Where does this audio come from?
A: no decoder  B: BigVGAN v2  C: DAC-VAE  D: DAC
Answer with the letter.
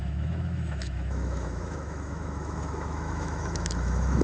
C